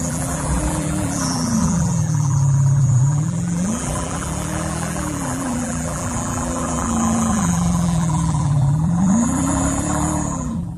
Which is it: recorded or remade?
remade